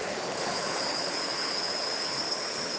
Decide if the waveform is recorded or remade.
remade